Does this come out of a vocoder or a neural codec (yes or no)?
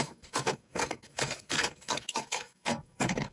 yes